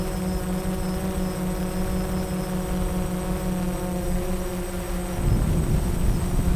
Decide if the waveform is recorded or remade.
recorded